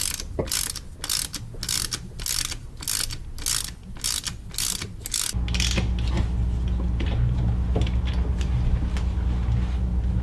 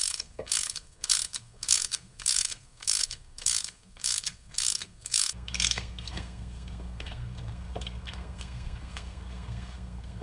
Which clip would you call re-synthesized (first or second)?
second